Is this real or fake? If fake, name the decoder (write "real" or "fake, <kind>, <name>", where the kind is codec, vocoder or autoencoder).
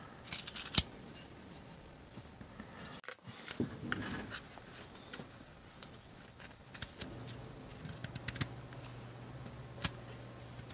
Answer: real